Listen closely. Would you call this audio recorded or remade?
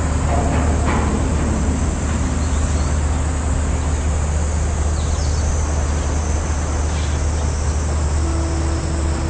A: recorded